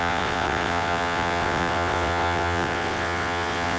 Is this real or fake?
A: fake